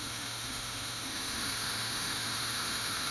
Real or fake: fake